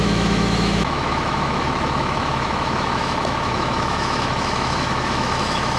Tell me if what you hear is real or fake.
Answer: fake